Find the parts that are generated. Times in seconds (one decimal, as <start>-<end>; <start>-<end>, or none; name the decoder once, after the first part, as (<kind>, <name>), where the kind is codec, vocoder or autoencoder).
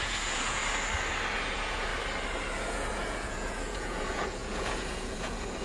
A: 0.0-0.6 (vocoder, Vocos); 1.5-1.9; 2.6-5.6